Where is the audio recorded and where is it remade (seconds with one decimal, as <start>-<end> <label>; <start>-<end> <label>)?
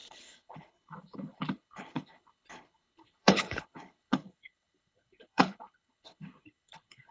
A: 0.0-7.1 remade